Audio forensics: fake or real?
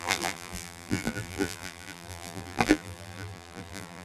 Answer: fake